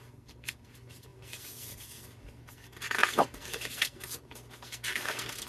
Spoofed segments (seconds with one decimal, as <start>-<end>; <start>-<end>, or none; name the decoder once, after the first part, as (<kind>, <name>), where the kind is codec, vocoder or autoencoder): 0.0-5.5 (codec, SNAC)